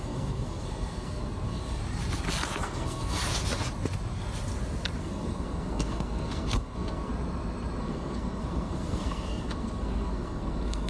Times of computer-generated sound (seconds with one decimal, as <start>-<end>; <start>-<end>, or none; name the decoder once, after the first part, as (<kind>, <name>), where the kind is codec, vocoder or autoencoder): 0.0-1.8 (codec, SNAC); 2.6-3.2; 5.0-7.1; 7.8-10.9